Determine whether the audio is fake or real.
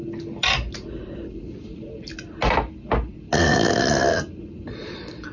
real